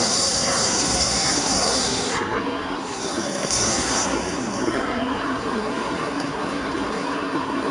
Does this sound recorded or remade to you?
remade